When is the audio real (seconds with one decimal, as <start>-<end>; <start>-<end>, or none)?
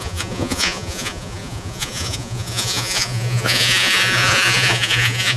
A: none